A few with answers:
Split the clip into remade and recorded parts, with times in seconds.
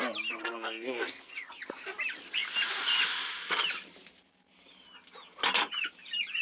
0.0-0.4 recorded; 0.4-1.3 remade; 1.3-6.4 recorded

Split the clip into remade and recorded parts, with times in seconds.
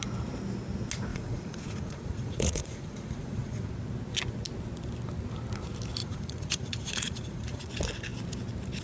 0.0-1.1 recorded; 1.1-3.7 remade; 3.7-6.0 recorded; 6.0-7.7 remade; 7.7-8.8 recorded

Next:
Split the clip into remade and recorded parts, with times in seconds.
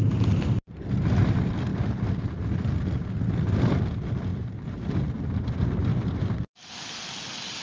0.0-4.3 recorded; 4.3-5.0 remade; 5.0-7.6 recorded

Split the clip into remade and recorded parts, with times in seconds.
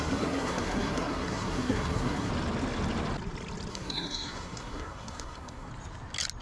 0.0-2.3 remade; 2.3-3.7 recorded; 3.7-5.7 remade; 5.7-6.4 recorded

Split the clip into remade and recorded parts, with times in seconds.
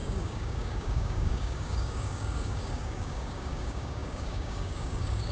0.0-5.3 remade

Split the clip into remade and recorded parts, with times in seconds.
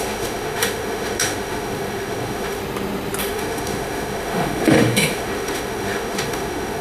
0.0-2.6 remade; 2.6-3.2 recorded; 3.2-6.8 remade